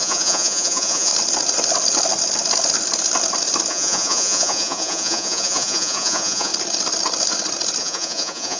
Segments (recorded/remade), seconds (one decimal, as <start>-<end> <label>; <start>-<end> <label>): 0.0-1.1 remade; 1.1-3.7 recorded; 3.7-6.5 remade; 6.5-7.8 recorded; 7.8-8.6 remade